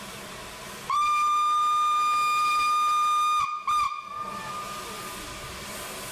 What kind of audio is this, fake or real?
real